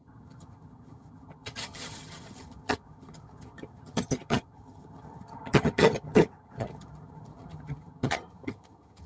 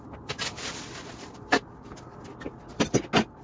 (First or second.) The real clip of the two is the second